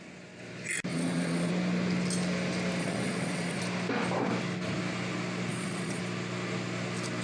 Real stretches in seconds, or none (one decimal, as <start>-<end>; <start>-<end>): 0.0-0.9; 1.5-2.8; 3.6-5.5; 6.0-7.2